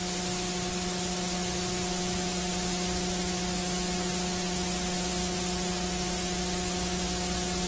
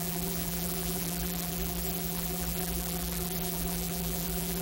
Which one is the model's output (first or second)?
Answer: second